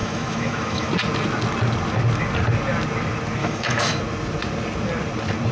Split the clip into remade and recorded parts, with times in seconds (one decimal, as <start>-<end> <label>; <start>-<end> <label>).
0.0-0.9 remade; 0.9-3.4 recorded; 3.4-4.0 remade; 4.0-5.5 recorded